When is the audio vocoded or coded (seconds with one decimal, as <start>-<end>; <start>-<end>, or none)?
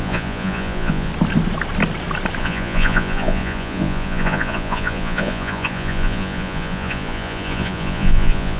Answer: 0.0-1.1; 2.4-8.6